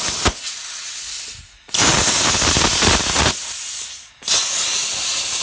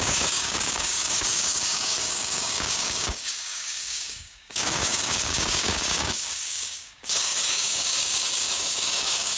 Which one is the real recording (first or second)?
first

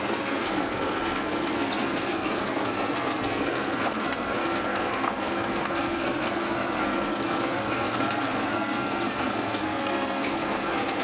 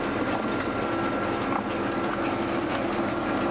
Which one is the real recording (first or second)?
second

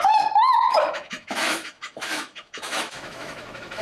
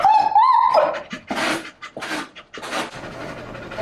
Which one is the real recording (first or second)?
second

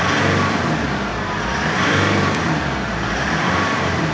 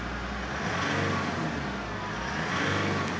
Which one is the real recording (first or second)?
second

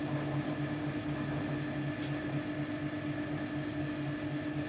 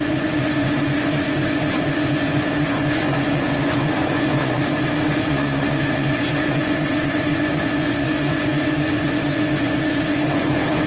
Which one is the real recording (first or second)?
first